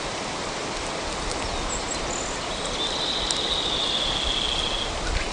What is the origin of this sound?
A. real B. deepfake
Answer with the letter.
A